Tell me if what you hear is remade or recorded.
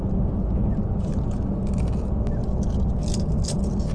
recorded